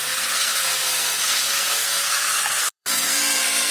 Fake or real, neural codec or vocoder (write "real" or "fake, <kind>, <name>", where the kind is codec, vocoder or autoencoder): fake, codec, SNAC